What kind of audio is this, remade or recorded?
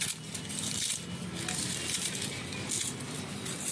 recorded